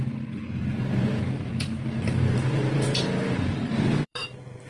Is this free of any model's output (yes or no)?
no